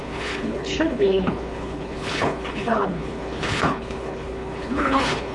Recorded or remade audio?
remade